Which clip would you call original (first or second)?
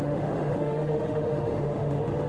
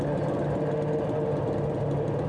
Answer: second